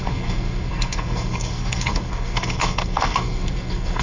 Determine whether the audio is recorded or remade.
remade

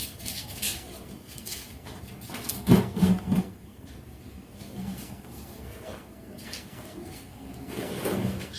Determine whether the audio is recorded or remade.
remade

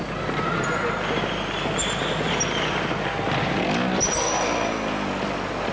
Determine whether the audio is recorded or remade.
recorded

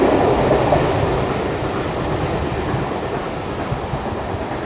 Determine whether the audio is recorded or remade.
recorded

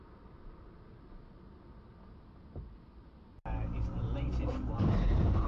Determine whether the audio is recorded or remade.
recorded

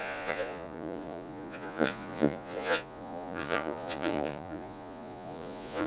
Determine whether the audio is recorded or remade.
remade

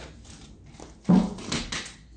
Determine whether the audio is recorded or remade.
recorded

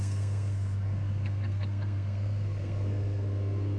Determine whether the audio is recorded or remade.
remade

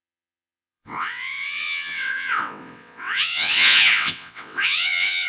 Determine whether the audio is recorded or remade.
remade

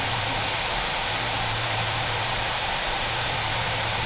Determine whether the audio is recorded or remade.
remade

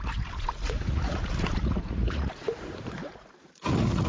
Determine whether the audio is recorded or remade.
remade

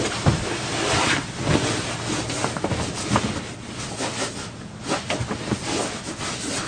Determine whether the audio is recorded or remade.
recorded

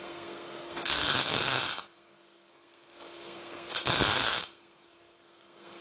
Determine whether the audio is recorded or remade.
remade